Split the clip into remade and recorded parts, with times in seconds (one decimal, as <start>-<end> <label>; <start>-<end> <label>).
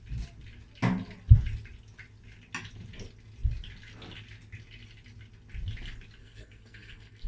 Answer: 0.0-6.2 recorded; 6.2-7.3 remade